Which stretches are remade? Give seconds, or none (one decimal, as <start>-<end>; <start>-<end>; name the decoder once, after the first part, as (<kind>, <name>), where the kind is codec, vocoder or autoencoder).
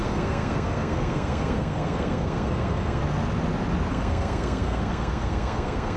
0.0-3.0 (codec, SNAC); 3.9-6.0